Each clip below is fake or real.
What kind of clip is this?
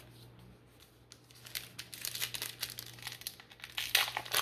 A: real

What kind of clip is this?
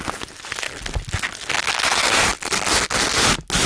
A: real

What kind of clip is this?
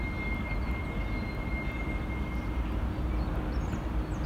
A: real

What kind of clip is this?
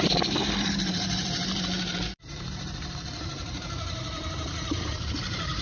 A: fake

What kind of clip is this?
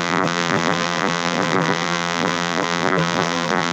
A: fake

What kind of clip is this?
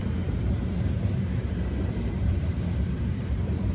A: fake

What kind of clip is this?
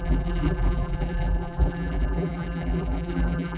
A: fake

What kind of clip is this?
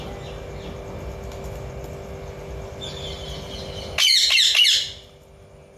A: real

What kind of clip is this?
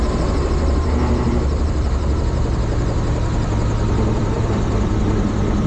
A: fake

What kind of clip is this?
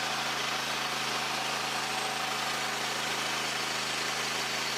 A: real